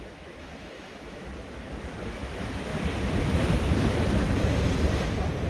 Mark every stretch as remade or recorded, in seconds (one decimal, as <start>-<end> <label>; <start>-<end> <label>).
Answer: 0.0-1.3 remade; 1.3-2.1 recorded; 2.1-2.7 remade; 2.7-5.5 recorded